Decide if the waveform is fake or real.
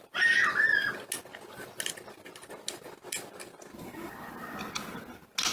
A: real